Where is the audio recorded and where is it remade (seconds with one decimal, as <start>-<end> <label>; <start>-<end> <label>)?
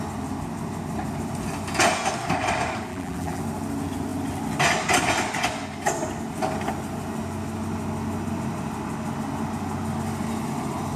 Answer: 0.0-2.9 recorded; 2.9-3.4 remade; 3.4-11.0 recorded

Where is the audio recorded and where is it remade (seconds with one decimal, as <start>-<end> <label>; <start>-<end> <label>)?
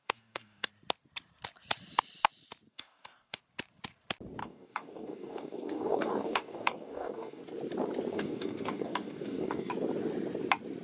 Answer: 0.0-0.7 remade; 0.7-2.7 recorded; 2.7-3.4 remade; 3.4-4.4 recorded; 4.4-7.4 remade; 7.4-8.1 recorded; 8.1-9.7 remade; 9.7-10.8 recorded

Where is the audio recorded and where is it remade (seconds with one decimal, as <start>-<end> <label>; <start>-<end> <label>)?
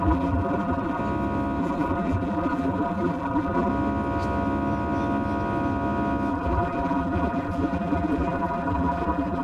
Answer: 0.0-1.0 remade; 1.0-1.6 recorded; 1.6-3.7 remade; 3.7-6.3 recorded; 6.3-9.4 remade